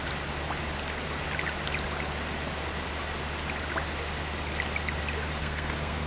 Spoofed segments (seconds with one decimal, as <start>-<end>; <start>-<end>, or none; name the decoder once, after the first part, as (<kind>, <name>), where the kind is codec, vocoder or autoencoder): 5.4-6.1 (codec, SNAC)